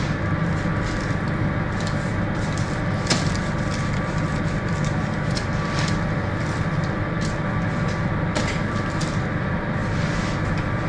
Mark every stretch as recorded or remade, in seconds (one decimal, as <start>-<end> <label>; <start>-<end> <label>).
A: 0.0-9.8 remade; 9.8-10.5 recorded; 10.5-10.9 remade